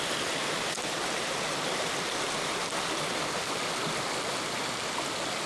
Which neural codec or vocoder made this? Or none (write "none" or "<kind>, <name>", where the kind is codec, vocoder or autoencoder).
none